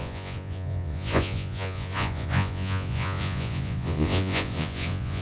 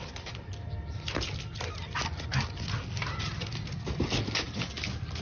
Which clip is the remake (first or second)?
first